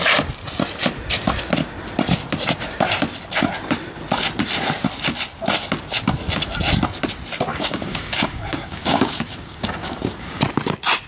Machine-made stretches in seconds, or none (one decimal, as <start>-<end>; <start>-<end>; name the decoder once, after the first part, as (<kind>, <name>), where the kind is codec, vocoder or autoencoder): 7.5-10.4 (codec, DAC)